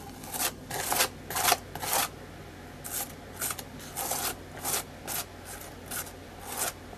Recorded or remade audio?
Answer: recorded